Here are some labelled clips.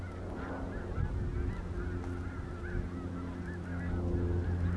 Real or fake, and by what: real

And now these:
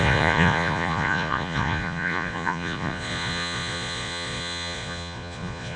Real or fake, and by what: fake, vocoder, Vocos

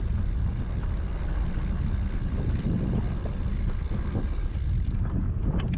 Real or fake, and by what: real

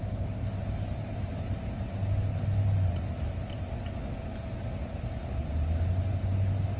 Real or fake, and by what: real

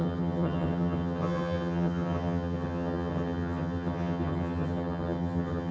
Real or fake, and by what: fake, vocoder, HiFi-GAN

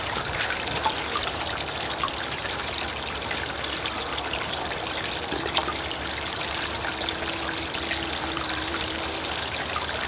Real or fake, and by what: real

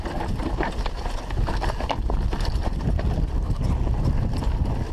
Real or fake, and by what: real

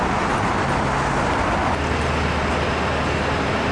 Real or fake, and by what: real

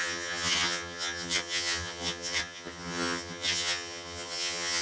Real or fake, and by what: fake, vocoder, HiFi-GAN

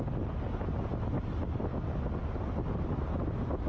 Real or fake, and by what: real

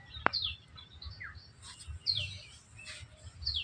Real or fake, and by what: real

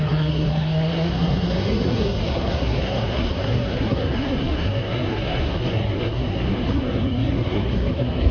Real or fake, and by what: fake, codec, SNAC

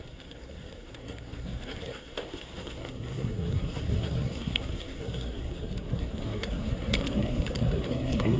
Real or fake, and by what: fake, codec, SNAC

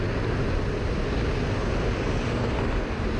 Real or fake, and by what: real